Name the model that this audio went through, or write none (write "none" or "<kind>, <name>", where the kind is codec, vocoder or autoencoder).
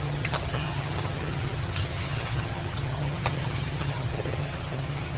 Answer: vocoder, HiFi-GAN